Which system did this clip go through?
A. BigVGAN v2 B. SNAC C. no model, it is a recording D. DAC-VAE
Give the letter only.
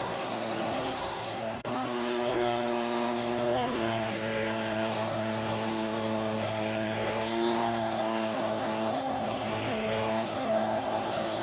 B